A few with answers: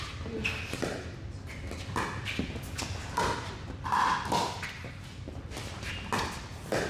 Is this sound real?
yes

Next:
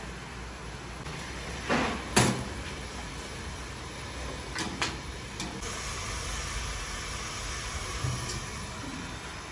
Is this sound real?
yes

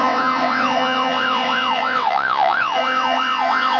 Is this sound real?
no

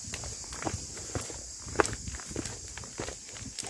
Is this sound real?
yes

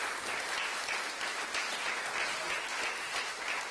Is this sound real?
yes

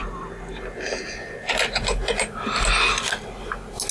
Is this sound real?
yes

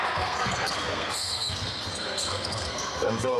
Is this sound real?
no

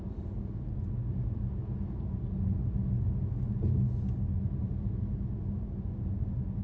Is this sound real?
yes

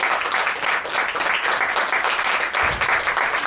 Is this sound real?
yes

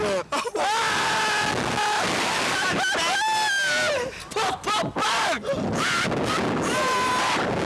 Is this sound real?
yes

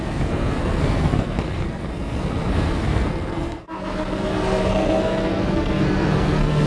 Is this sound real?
no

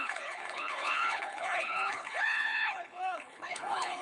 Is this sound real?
no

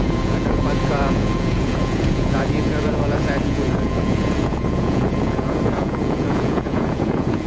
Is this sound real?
no